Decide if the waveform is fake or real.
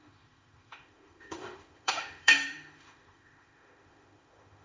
fake